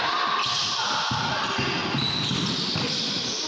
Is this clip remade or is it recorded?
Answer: recorded